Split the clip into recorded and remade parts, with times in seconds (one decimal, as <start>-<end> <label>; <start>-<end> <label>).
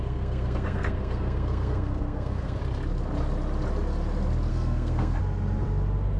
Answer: 0.0-2.6 remade; 2.6-4.5 recorded; 4.5-5.2 remade; 5.2-6.2 recorded